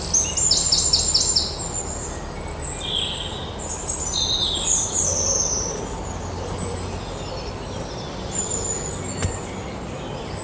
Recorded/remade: recorded